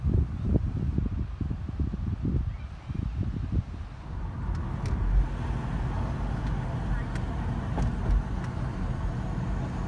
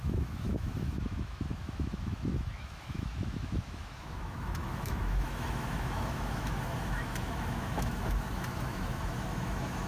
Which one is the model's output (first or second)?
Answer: second